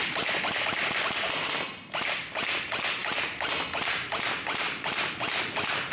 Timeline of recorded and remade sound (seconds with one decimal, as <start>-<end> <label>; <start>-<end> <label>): 0.0-5.9 recorded